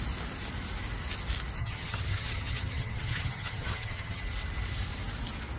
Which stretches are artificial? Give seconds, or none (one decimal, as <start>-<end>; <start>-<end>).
1.6-4.2